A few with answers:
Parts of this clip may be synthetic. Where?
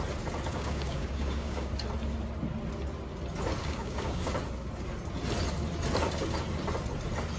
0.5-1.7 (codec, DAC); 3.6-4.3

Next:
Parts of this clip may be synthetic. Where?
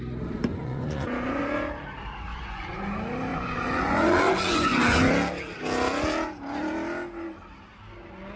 0.5-1.4 (vocoder, Vocos); 2.3-2.8; 3.3-5.0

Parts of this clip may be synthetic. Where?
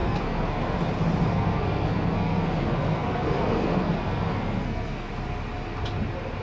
0.0-0.8 (codec, SNAC); 1.3-5.1